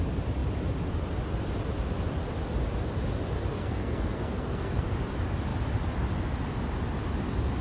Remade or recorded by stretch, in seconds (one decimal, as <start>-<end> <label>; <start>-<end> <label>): 0.0-3.5 recorded; 3.5-4.9 remade; 4.9-7.6 recorded

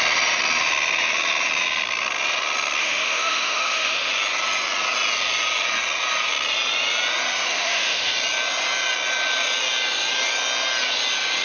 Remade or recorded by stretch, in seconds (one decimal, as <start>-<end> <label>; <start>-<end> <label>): 0.0-2.8 recorded; 2.8-4.1 remade; 4.1-7.5 recorded; 7.5-8.1 remade; 8.1-11.4 recorded

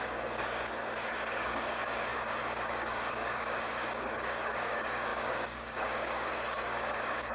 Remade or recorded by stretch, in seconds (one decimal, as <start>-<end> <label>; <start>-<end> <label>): 0.0-7.3 remade

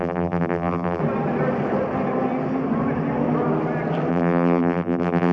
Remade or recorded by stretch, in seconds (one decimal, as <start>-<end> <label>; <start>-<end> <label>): 0.0-1.0 remade; 1.0-4.1 recorded; 4.1-5.3 remade

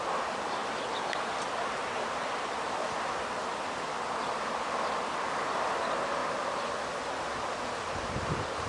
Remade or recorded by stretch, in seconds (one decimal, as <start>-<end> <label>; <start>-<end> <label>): 0.0-6.2 remade; 6.2-7.7 recorded; 7.7-8.7 remade

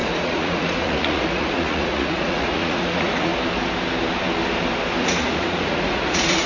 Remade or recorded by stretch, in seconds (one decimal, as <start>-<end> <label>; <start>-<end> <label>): 0.0-3.3 remade; 3.3-5.0 recorded; 5.0-6.5 remade